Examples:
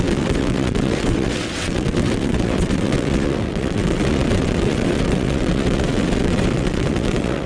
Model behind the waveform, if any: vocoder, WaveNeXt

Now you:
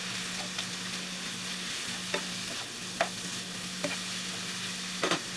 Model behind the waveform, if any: none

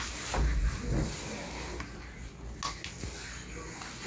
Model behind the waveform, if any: none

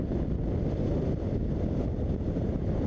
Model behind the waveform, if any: none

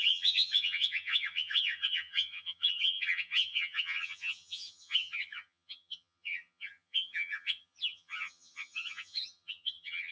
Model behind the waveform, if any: vocoder, HiFi-GAN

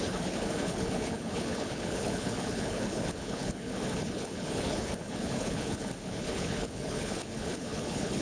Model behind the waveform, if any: codec, HILCodec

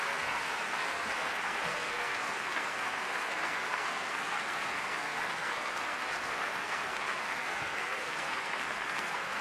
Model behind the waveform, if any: codec, SNAC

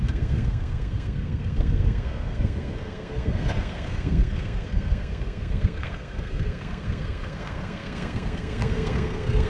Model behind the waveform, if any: codec, SNAC